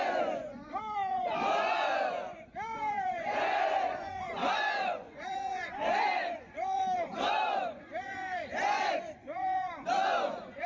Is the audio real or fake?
fake